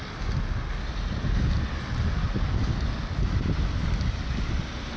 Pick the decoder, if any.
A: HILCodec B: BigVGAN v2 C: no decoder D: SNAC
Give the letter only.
C